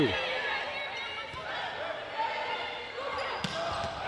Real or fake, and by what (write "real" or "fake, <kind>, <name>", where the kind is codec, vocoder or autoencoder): real